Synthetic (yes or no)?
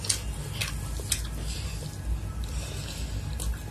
no